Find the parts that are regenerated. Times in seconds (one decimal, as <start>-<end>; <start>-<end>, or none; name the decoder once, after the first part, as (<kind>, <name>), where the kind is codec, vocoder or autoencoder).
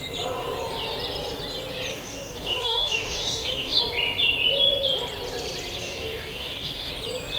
1.9-3.8 (codec, DAC); 5.8-6.9